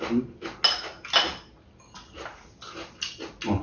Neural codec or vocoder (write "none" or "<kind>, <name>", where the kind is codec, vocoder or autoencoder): none